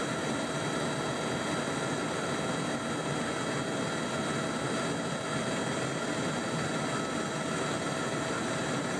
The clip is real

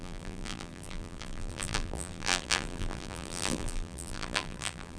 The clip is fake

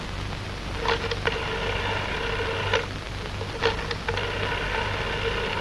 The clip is real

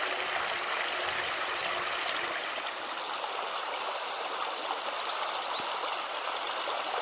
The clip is real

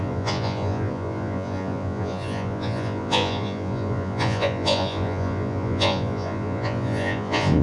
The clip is fake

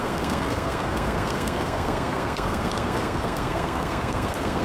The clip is fake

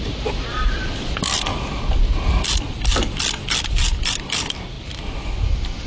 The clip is real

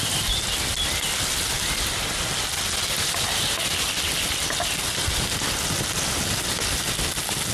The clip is real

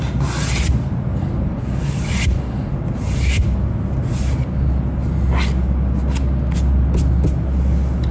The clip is real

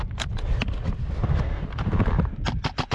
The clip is real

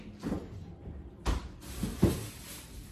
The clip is real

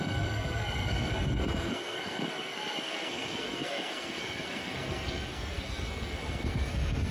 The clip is fake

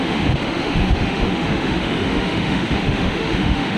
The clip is fake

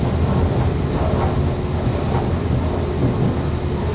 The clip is real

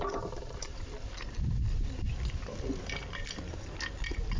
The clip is real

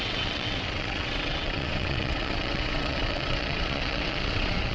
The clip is fake